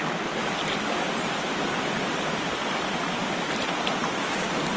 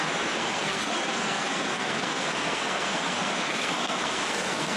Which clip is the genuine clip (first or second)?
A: first